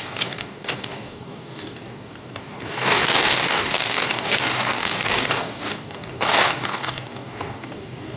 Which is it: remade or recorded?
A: remade